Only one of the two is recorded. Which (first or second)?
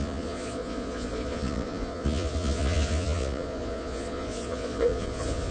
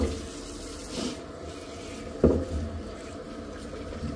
second